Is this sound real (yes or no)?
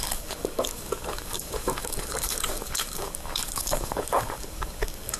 no